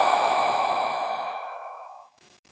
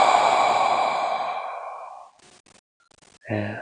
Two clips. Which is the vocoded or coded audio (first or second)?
first